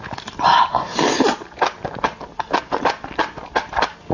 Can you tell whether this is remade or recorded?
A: recorded